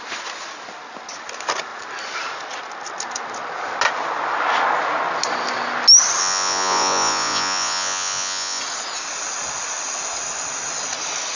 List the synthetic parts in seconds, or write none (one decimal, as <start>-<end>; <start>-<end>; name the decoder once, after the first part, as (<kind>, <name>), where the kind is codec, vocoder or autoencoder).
6.2-8.6 (vocoder, Vocos)